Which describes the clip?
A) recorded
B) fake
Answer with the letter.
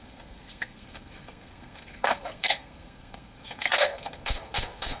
B